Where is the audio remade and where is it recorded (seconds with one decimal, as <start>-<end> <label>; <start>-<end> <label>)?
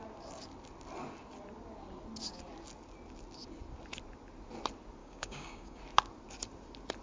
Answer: 0.0-5.0 recorded; 5.0-5.8 remade; 5.8-7.0 recorded